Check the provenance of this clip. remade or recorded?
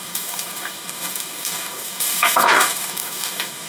remade